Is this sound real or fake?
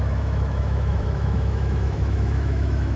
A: fake